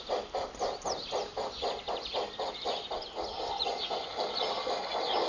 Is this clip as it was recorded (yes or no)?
yes